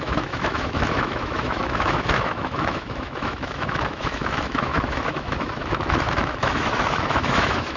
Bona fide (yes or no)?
no